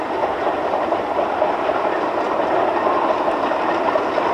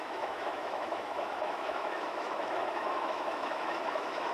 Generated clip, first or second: second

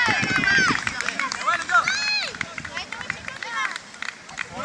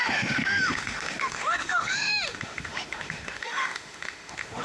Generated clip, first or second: second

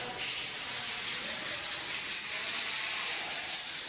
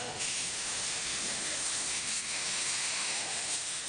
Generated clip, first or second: second